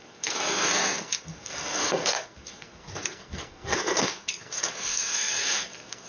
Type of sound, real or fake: fake